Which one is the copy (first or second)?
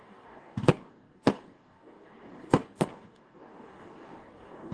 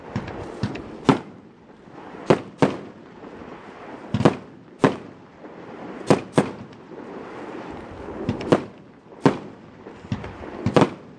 first